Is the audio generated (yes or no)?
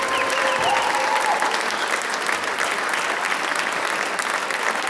no